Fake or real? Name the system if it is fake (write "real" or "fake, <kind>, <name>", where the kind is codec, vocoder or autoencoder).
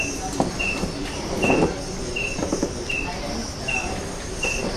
fake, vocoder, BigVGAN v2